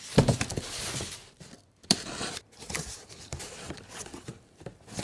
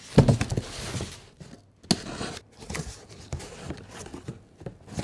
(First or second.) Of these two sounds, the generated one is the first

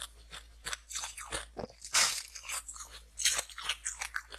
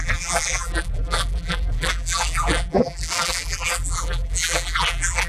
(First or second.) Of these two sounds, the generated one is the second